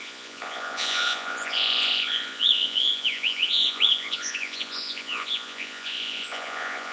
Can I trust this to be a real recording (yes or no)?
no